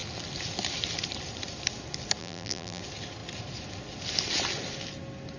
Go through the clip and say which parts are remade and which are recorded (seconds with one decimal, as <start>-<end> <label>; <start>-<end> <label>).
0.0-2.2 recorded; 2.2-2.8 remade; 2.8-5.4 recorded